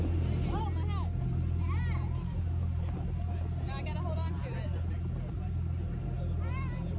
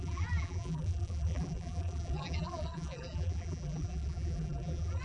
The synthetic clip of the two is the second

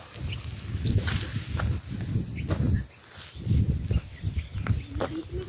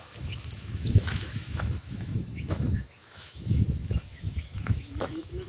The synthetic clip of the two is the second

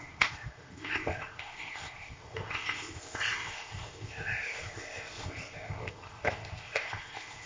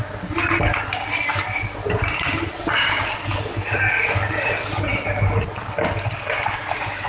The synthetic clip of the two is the first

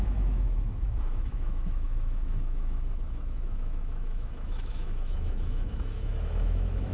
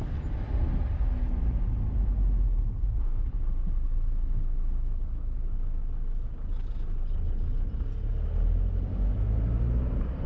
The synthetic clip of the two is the first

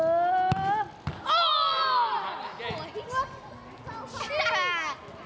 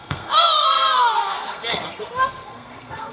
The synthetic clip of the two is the second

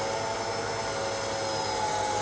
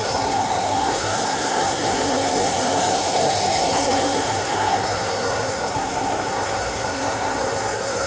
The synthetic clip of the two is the second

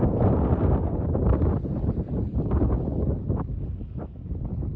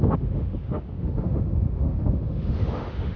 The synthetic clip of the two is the second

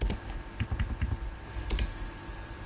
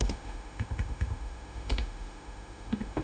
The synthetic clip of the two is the second